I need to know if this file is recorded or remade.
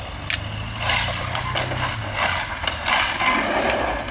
recorded